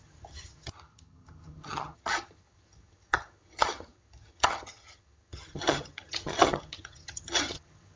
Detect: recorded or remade remade